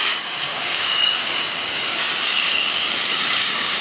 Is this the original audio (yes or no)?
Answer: no